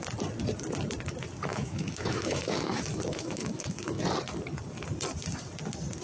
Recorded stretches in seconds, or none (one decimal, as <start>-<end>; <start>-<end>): 0.0-1.5; 4.0-6.0